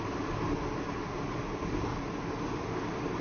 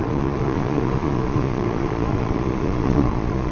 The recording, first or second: first